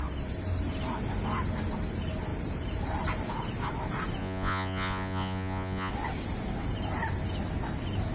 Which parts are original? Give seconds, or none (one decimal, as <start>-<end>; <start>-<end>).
0.0-4.2; 5.9-8.1